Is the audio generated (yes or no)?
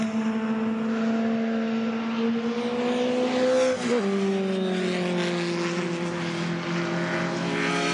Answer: no